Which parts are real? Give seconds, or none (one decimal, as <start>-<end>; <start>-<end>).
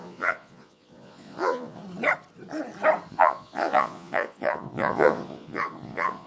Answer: 1.8-3.1